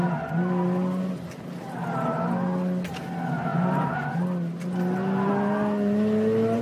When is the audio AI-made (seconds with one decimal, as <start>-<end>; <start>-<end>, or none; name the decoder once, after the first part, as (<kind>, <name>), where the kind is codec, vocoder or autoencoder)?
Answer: none